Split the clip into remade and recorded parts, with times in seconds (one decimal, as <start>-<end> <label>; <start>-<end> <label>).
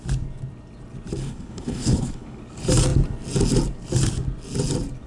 0.0-1.2 recorded; 1.2-2.4 remade; 2.4-5.1 recorded